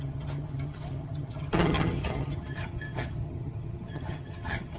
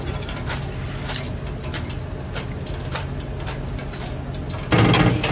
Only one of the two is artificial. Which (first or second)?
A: first